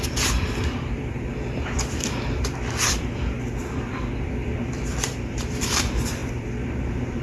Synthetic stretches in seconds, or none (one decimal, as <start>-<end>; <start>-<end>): 0.0-7.2